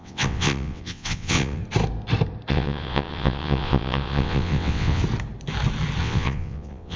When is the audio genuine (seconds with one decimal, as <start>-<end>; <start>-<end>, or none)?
1.6-2.5; 5.0-6.0